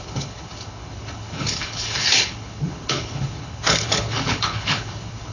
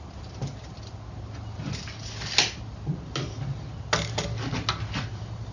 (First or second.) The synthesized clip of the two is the first